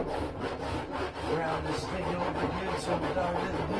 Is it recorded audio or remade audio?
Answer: recorded